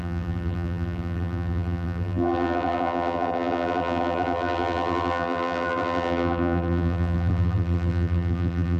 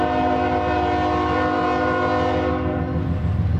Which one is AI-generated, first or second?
first